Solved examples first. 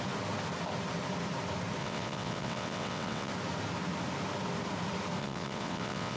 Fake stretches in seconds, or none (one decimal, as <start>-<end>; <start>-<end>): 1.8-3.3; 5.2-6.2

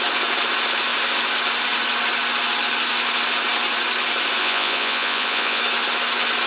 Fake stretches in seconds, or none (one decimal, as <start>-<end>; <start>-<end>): 4.4-5.6

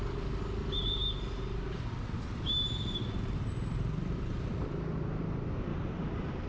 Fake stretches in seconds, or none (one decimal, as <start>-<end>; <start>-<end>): 0.6-4.5; 5.7-6.5

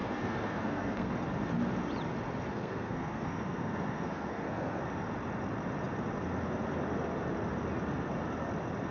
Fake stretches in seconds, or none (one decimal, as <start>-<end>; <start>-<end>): 0.0-1.1; 2.5-4.8